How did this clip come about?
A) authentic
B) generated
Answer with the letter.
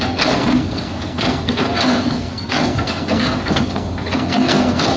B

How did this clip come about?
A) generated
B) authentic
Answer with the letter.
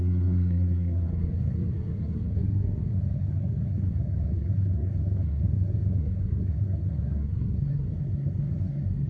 A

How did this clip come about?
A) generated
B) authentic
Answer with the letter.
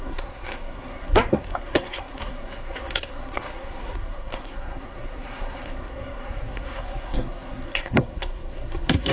A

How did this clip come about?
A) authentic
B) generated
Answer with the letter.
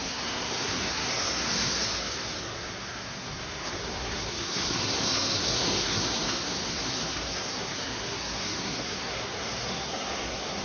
B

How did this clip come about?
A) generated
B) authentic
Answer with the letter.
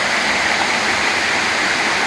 B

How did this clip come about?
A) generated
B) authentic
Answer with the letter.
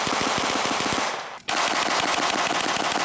B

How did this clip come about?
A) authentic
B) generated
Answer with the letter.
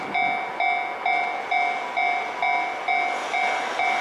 A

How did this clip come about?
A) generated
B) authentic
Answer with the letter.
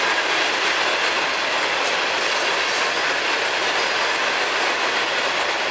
B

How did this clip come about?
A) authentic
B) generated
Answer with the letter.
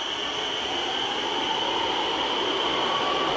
A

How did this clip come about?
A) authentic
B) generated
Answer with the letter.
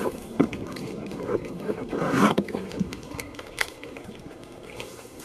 B